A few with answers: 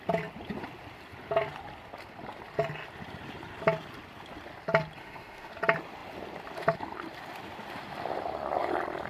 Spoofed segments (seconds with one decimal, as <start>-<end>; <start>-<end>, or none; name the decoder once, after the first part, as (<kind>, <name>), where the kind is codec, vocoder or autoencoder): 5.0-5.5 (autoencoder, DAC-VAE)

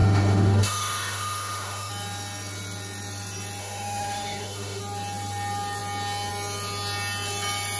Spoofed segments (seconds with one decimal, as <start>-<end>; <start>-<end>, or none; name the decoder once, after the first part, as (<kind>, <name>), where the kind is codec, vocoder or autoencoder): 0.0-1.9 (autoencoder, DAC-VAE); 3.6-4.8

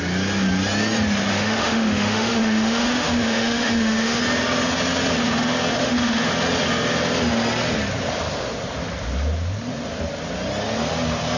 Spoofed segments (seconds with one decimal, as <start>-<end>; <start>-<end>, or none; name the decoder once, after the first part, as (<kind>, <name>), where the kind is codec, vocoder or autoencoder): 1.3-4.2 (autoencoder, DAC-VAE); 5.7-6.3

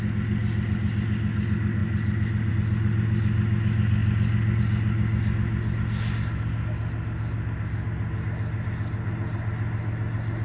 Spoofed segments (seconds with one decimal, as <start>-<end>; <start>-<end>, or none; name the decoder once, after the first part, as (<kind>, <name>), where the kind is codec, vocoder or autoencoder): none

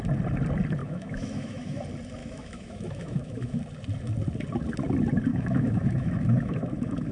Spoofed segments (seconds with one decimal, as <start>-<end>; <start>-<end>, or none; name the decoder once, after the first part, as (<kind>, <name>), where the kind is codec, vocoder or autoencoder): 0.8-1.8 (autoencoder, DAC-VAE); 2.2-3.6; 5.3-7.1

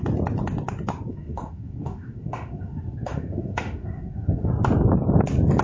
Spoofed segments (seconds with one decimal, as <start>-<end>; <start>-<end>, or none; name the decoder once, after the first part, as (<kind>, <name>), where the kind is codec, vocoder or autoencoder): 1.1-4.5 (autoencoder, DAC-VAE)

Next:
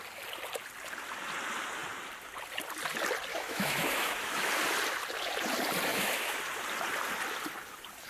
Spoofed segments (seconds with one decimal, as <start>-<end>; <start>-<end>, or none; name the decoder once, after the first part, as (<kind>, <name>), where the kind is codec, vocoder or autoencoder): 3.3-4.5 (autoencoder, DAC-VAE); 5.9-6.4